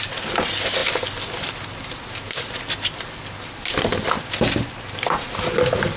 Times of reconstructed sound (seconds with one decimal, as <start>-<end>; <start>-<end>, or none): none